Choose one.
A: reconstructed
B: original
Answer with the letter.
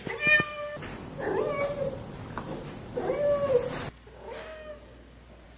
B